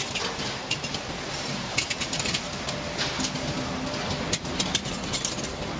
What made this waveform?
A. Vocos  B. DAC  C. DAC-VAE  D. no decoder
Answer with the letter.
D